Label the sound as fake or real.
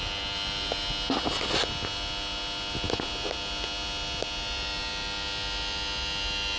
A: real